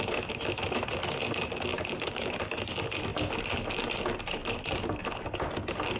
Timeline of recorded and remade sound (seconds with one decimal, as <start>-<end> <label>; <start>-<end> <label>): 0.0-1.7 recorded; 1.7-2.4 remade; 2.4-4.4 recorded; 4.4-5.0 remade; 5.0-6.0 recorded